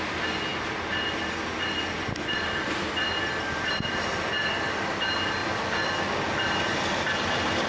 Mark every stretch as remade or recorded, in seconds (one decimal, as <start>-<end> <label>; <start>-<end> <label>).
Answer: 0.0-7.7 recorded